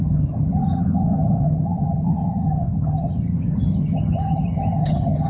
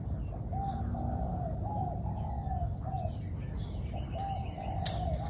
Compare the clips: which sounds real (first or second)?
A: second